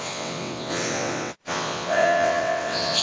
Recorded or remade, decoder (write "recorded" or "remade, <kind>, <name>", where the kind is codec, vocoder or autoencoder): remade, vocoder, WaveNeXt